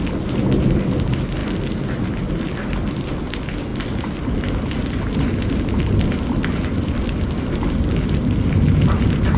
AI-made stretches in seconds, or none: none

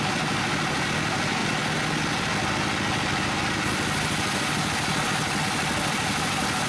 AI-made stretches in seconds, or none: none

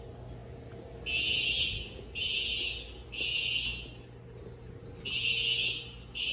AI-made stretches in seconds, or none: none

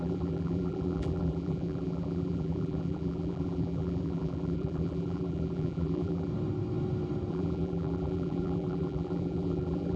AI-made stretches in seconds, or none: 0.0-6.3 (vocoder, BigVGAN v2); 7.3-10.0

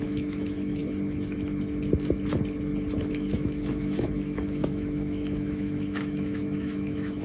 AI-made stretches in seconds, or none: 0.0-0.8 (autoencoder, DAC-VAE); 3.1-7.2

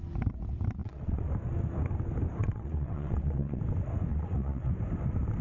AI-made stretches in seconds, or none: 0.8-1.3 (vocoder, WaveNeXt); 2.4-3.6; 4.1-4.7

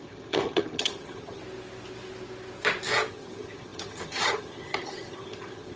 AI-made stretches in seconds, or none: 0.0-1.4 (vocoder, HiFi-GAN); 3.1-5.8

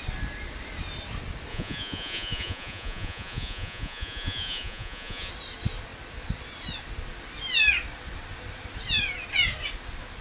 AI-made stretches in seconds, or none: 1.5-5.3 (vocoder, Vocos)